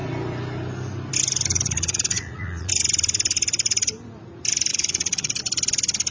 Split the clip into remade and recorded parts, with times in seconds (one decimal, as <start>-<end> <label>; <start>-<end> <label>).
0.0-1.5 recorded; 1.5-2.7 remade; 2.7-4.7 recorded; 4.7-5.4 remade; 5.4-6.1 recorded